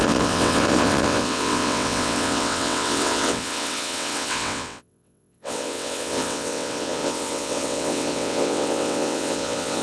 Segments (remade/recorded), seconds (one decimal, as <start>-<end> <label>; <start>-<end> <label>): 0.0-9.8 remade